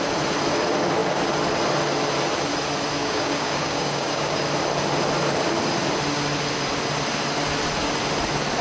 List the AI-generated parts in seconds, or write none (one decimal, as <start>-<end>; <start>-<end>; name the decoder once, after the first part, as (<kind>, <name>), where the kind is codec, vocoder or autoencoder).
3.0-4.4 (codec, DAC)